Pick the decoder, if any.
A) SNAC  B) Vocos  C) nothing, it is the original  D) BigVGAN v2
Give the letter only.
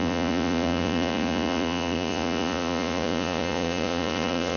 B